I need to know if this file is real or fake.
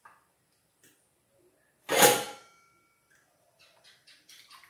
real